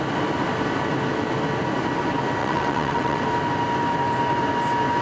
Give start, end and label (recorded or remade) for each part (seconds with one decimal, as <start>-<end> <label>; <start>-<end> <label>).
0.0-2.4 recorded; 2.4-3.2 remade; 3.2-5.0 recorded